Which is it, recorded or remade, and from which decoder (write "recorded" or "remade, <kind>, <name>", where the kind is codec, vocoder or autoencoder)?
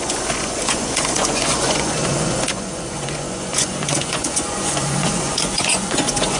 remade, vocoder, Vocos